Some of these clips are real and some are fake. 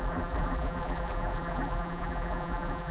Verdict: fake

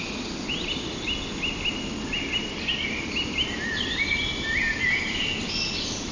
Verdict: real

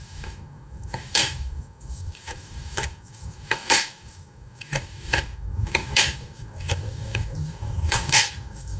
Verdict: fake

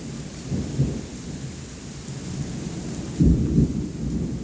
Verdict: real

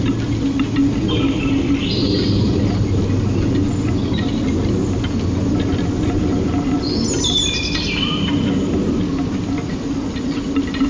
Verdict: real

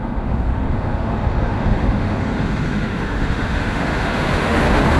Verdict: fake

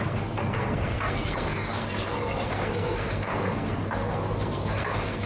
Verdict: fake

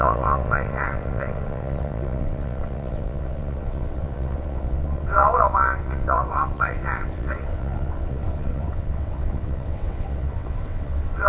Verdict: fake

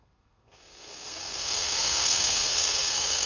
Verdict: fake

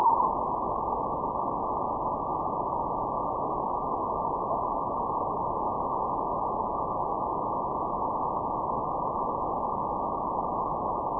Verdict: real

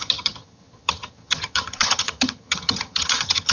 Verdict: fake